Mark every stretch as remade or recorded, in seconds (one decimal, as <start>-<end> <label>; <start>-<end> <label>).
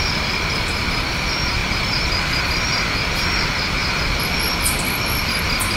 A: 0.0-1.6 recorded; 1.6-2.4 remade; 2.4-3.8 recorded; 3.8-5.8 remade